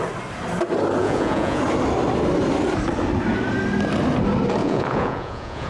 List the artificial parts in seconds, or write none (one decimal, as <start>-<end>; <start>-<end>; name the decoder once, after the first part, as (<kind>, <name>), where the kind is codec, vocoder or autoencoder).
1.0-1.6 (vocoder, Vocos); 4.6-5.7